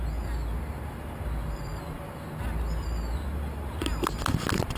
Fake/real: real